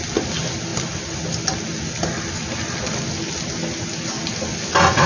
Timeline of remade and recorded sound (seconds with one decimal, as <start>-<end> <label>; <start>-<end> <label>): 0.0-5.1 recorded